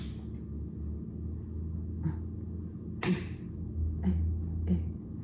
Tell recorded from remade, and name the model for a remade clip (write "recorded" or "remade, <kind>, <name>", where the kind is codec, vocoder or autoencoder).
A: recorded